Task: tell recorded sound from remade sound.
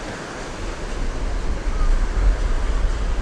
recorded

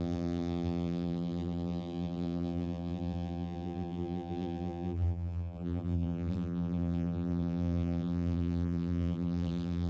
remade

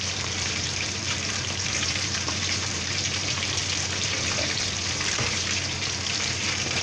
remade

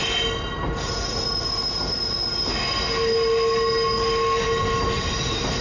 recorded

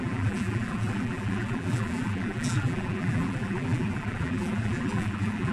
remade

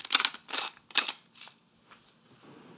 recorded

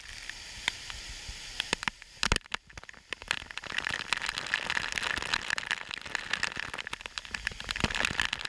recorded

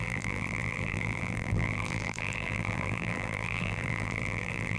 remade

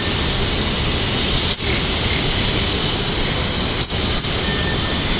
recorded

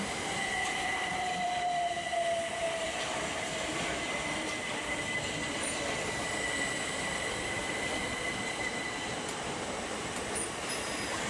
remade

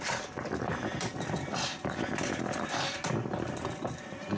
recorded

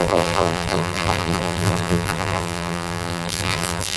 remade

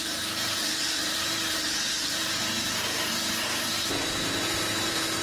remade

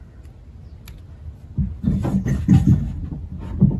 recorded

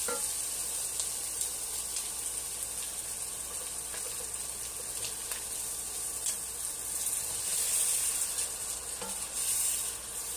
recorded